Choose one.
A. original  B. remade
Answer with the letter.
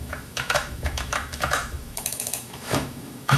B